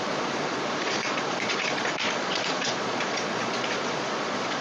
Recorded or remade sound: remade